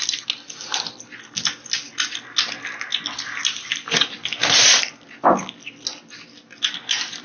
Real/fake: real